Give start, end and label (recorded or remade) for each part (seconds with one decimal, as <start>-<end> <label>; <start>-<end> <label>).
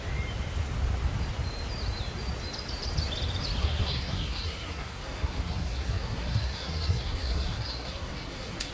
0.0-3.6 recorded; 3.6-8.7 remade